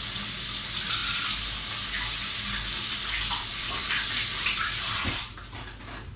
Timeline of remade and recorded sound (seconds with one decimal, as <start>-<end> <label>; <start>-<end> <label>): 0.0-6.2 recorded